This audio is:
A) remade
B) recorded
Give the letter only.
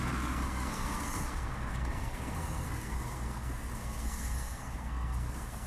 A